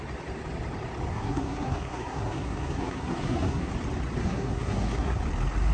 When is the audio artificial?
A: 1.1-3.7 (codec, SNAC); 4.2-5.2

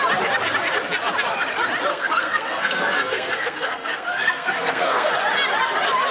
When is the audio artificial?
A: 1.9-5.1 (codec, SNAC)

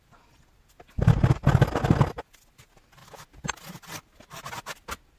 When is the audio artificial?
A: none

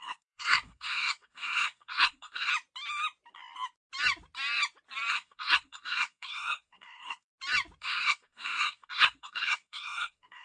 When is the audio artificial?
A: 0.0-2.5 (codec, SNAC); 5.1-7.3; 7.8-10.4

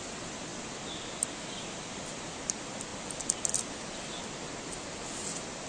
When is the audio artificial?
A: none

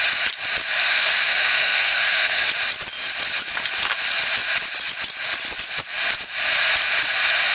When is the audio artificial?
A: 0.9-2.5 (codec, SNAC)